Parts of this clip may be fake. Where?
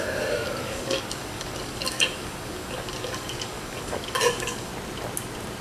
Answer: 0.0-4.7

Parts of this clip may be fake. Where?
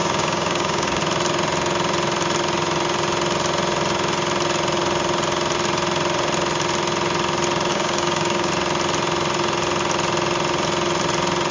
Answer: 0.0-1.0; 7.7-8.5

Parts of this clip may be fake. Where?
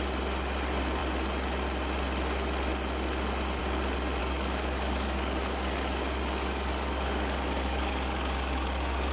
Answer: 4.2-9.1